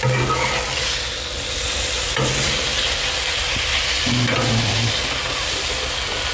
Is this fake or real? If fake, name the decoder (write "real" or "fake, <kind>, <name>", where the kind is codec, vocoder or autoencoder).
real